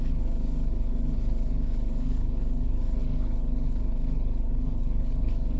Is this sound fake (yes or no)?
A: yes